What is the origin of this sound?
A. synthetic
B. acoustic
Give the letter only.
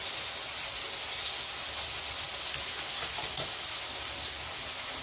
B